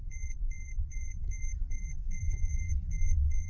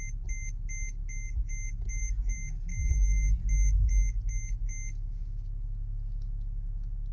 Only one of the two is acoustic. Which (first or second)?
second